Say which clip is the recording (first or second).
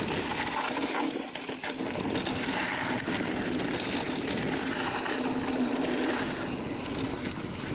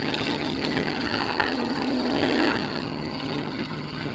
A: first